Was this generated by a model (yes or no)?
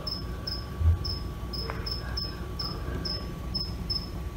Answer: yes